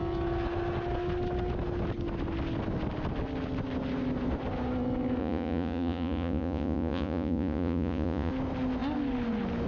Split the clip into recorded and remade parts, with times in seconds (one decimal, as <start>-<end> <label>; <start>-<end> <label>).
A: 0.0-5.2 recorded; 5.2-8.3 remade; 8.3-9.7 recorded